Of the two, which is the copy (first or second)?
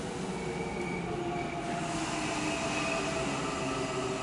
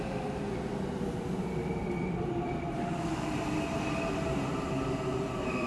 second